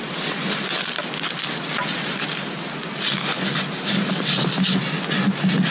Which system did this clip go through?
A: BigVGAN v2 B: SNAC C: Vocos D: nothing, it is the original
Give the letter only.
D